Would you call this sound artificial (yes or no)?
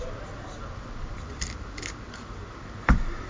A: no